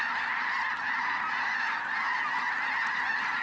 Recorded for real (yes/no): yes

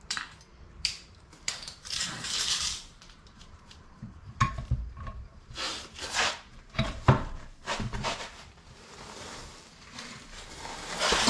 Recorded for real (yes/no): no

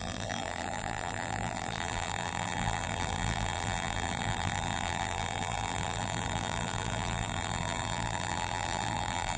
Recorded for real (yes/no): no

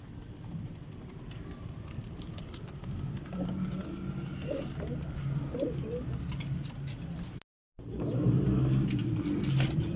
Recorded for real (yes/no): yes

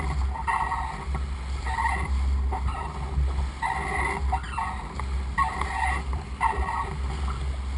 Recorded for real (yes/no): yes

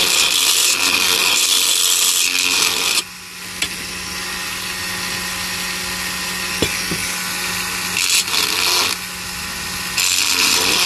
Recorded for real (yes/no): yes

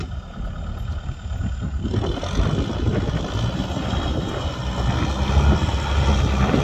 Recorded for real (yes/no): yes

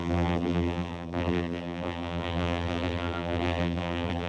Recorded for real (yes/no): no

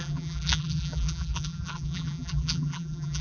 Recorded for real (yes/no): no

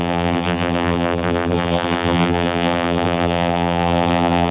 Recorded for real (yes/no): no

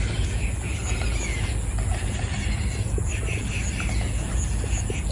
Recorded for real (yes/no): yes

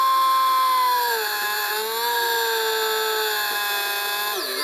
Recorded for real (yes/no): yes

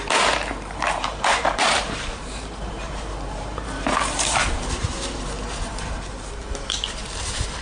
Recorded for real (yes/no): no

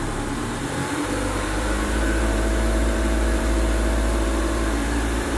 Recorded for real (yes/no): no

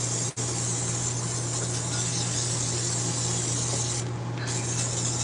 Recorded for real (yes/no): yes